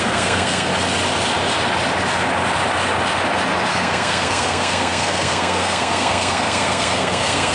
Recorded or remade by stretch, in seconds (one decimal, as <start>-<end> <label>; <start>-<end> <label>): 0.0-0.7 remade; 0.7-3.7 recorded; 3.7-7.5 remade